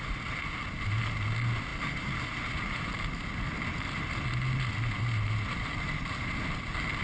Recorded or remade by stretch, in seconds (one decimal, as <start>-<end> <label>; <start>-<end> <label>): 0.0-7.0 recorded